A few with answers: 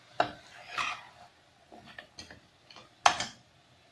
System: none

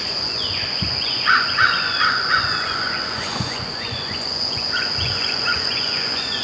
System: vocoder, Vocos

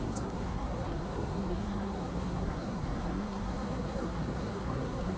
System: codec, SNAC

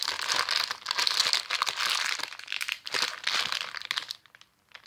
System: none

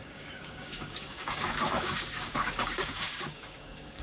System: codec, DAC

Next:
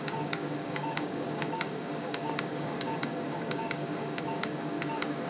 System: codec, DAC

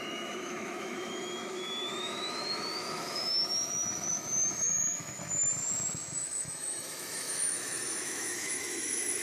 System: autoencoder, DAC-VAE